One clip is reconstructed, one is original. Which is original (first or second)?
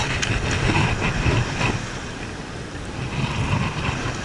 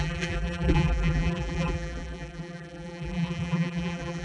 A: first